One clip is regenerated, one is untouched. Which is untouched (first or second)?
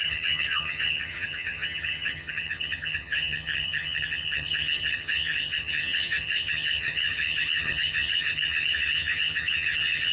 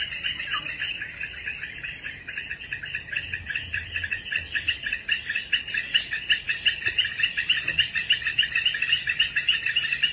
second